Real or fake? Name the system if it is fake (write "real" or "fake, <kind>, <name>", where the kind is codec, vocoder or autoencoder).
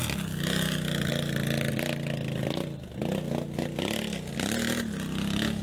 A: real